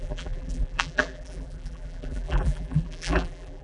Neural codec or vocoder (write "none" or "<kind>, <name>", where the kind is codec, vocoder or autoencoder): vocoder, BigVGAN v2